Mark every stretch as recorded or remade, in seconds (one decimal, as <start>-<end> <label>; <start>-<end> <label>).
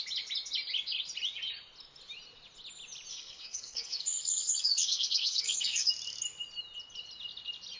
0.0-3.1 recorded; 3.1-5.9 remade; 5.9-7.8 recorded